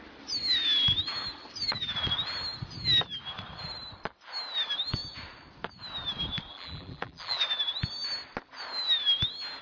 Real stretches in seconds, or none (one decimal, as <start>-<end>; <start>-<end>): 0.0-6.5; 7.4-9.6